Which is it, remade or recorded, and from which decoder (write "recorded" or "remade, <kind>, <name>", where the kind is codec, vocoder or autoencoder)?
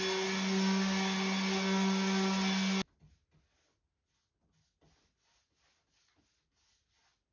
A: recorded